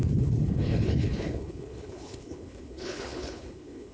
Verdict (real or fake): fake